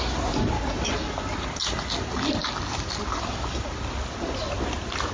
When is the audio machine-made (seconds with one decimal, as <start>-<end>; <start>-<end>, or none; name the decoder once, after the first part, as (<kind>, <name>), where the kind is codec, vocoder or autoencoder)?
none

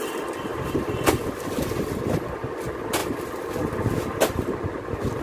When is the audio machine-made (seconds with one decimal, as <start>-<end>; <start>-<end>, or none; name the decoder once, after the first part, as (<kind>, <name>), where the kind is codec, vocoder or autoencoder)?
none

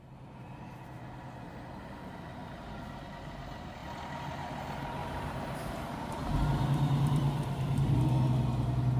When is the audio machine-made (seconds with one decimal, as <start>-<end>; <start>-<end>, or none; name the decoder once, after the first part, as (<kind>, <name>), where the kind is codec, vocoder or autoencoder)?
5.0-8.0 (vocoder, BigVGAN v2)

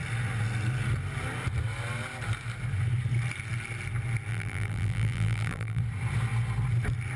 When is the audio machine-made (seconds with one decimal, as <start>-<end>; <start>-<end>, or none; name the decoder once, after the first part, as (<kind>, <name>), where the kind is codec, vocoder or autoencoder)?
4.3-5.8 (vocoder, BigVGAN v2)

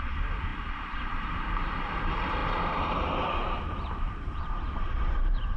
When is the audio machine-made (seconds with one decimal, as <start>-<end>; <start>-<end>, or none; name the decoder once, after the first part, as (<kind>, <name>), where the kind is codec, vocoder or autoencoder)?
0.0-5.6 (vocoder, BigVGAN v2)

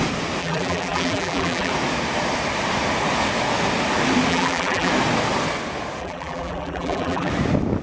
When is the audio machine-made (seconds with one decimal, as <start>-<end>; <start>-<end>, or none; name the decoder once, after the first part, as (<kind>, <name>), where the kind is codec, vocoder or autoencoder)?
0.4-1.7 (vocoder, BigVGAN v2); 4.3-4.9; 6.0-7.3

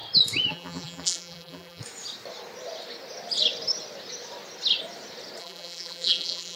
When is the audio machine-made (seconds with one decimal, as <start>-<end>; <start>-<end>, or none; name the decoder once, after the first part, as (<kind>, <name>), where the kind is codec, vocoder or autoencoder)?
0.5-1.8 (vocoder, BigVGAN v2); 5.4-6.6